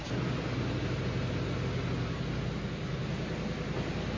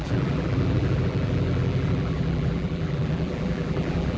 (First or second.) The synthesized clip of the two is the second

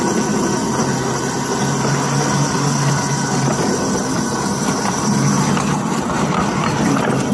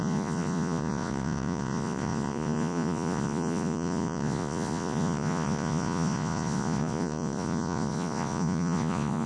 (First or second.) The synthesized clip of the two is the second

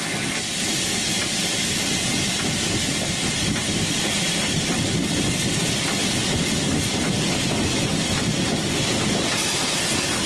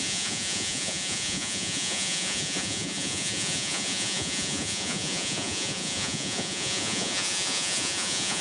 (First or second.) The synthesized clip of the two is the second